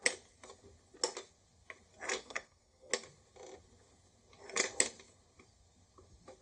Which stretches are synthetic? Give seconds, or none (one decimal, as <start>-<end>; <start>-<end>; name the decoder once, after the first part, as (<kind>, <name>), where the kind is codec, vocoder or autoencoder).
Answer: 2.2-2.9 (codec, SNAC)